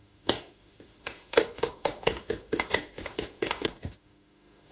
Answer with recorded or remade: remade